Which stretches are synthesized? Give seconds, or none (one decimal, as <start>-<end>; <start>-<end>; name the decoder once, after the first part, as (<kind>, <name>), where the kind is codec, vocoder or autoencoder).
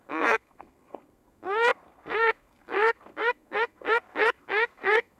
0.0-5.2 (codec, SNAC)